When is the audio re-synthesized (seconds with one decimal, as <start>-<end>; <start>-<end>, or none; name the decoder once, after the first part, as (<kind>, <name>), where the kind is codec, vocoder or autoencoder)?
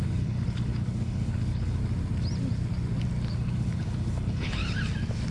0.0-1.8 (codec, HILCodec); 3.3-4.6